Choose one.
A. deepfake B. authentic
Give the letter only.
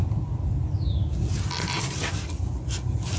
B